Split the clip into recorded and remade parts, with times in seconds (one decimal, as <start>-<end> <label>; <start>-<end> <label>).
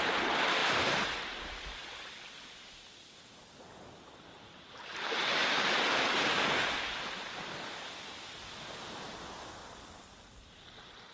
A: 0.0-5.4 recorded; 5.4-6.3 remade; 6.3-11.1 recorded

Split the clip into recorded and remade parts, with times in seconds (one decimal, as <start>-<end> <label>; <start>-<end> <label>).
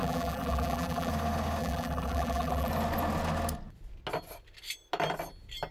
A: 0.0-1.1 remade; 1.1-1.6 recorded; 1.6-2.7 remade; 2.7-5.7 recorded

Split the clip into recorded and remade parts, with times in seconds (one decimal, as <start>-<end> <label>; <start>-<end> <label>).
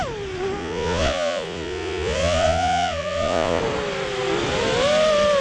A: 0.0-0.6 recorded; 0.6-3.6 remade; 3.6-5.4 recorded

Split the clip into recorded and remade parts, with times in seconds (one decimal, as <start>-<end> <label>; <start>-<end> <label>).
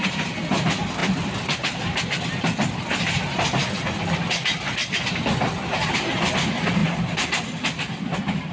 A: 0.0-8.5 recorded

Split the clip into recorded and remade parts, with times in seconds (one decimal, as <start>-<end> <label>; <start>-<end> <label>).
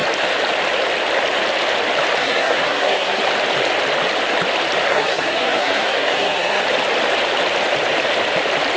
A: 0.0-2.2 recorded; 2.2-3.2 remade; 3.2-4.9 recorded; 4.9-6.6 remade; 6.6-8.8 recorded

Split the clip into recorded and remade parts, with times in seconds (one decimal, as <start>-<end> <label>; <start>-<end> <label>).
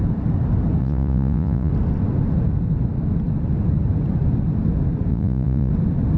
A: 0.0-0.8 recorded; 0.8-1.7 remade; 1.7-5.1 recorded; 5.1-5.7 remade; 5.7-6.2 recorded